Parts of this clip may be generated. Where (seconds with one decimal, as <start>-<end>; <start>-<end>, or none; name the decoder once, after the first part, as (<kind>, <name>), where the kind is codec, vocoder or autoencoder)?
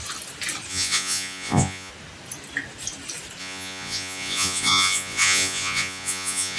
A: 0.7-1.9 (vocoder, Vocos); 3.4-6.6